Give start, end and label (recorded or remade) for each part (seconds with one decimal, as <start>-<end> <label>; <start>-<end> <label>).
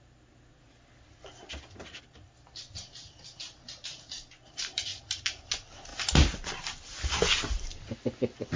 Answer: 0.0-8.6 recorded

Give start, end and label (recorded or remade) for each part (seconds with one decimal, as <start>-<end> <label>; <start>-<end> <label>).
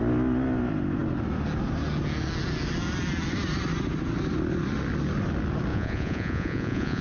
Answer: 0.0-5.7 recorded; 5.7-7.0 remade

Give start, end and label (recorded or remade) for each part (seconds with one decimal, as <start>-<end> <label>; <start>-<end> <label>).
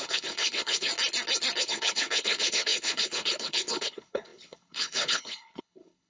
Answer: 0.0-0.9 remade; 0.9-1.6 recorded; 1.6-6.1 remade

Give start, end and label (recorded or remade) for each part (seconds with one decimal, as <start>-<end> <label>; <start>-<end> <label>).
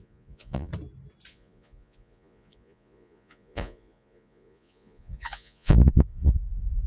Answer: 0.0-0.7 remade; 0.7-1.3 recorded; 1.3-6.9 remade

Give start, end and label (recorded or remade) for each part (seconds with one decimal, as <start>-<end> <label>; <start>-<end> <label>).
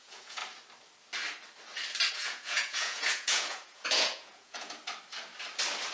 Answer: 0.0-0.4 remade; 0.4-2.1 recorded; 2.1-4.8 remade; 4.8-5.9 recorded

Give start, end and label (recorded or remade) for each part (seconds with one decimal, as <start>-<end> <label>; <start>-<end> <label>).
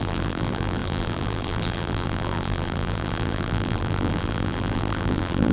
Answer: 0.0-5.5 remade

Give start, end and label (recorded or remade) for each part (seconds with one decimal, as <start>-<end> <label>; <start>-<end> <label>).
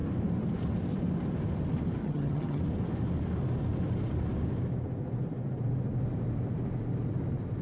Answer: 0.0-2.0 recorded; 2.0-2.6 remade; 2.6-7.6 recorded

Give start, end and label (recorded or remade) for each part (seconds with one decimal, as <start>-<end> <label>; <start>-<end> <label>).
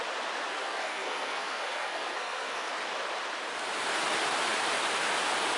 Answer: 0.0-0.5 recorded; 0.5-2.7 remade; 2.7-5.6 recorded